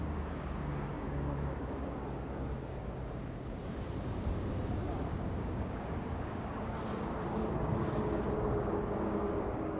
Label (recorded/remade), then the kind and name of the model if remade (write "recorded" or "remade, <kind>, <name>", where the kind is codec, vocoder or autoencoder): remade, codec, DAC